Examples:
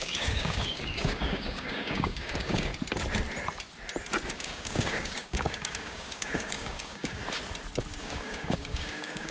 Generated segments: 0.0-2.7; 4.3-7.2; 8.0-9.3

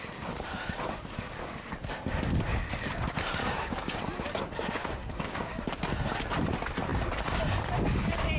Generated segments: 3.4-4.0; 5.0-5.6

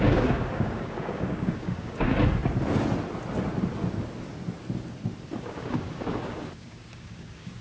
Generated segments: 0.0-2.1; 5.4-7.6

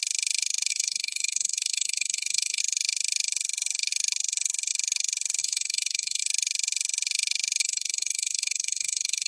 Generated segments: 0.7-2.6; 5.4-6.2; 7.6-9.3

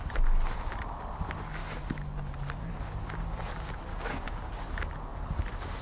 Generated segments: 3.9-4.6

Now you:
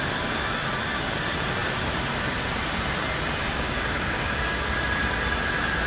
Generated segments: 3.4-4.6

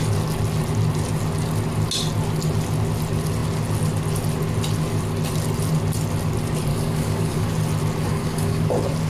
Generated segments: 6.7-7.5; 8.1-8.7